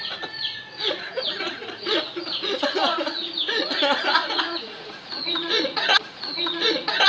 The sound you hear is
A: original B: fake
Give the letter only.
B